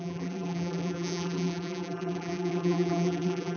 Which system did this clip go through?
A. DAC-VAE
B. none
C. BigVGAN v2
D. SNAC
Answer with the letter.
C